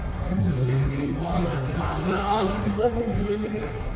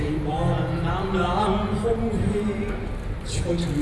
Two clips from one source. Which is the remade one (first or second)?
first